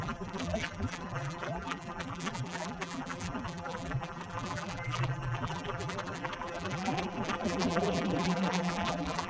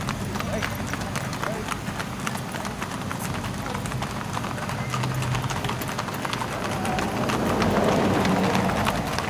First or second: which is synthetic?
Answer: first